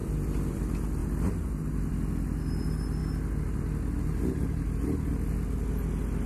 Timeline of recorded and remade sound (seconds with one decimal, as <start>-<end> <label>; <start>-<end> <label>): 0.0-0.6 remade; 0.6-6.3 recorded